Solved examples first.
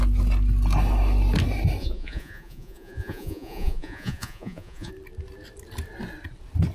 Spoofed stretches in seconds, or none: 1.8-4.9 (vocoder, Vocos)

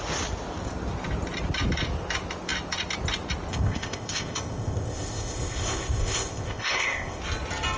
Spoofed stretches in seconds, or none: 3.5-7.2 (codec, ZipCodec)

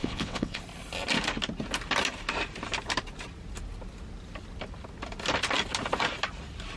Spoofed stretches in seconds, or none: 0.0-0.6 (vocoder, WaveNeXt)

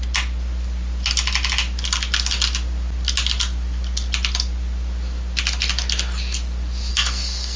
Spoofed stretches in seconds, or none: 6.9-7.6 (codec, SNAC)